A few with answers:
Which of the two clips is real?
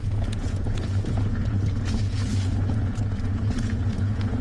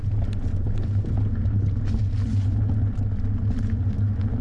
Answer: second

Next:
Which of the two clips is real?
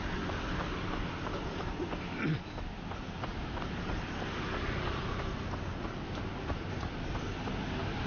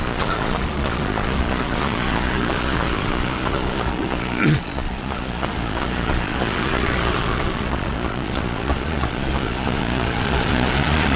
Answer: first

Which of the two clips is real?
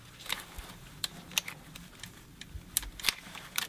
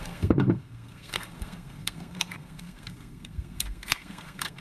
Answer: first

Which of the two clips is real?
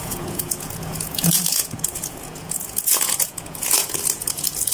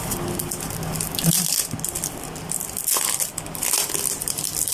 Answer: second